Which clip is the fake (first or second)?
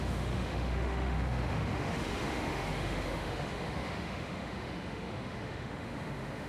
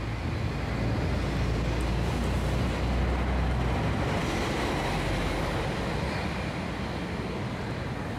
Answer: first